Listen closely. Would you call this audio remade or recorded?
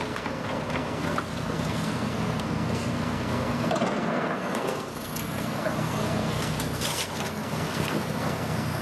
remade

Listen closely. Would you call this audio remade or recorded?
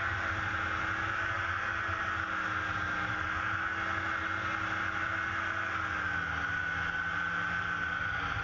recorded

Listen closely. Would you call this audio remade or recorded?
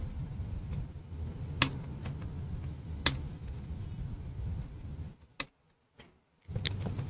recorded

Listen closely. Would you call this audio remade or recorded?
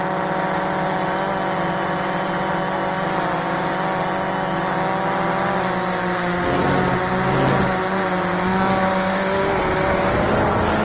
recorded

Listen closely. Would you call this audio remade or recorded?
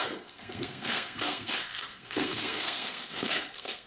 remade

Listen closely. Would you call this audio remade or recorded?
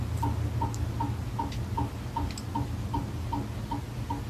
recorded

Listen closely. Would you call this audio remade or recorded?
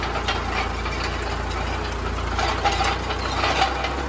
recorded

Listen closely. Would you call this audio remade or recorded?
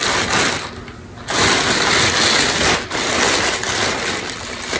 recorded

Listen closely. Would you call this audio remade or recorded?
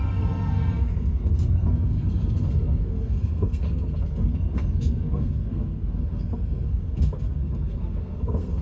remade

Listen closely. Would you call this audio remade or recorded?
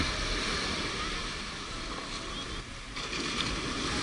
recorded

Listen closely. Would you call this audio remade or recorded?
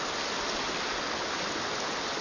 recorded